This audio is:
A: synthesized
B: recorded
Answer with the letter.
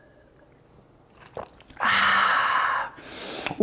B